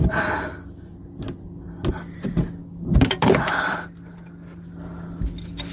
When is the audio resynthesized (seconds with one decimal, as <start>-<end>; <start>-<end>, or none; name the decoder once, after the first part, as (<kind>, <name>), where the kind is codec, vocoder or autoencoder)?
none